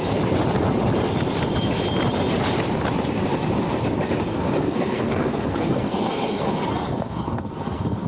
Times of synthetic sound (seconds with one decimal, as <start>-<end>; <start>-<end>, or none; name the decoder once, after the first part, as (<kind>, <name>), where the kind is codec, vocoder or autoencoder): 4.3-8.1 (codec, SNAC)